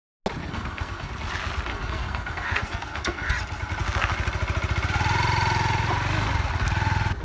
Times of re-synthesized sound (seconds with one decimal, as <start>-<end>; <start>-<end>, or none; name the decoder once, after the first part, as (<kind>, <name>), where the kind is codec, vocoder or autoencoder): 0.4-1.1 (codec, SNAC); 1.7-3.3